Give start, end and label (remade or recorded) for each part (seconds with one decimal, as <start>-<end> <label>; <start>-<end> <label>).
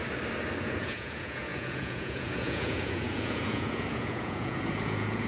0.0-0.6 recorded; 0.6-5.3 remade